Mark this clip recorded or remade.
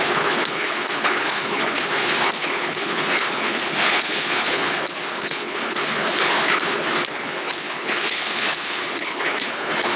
remade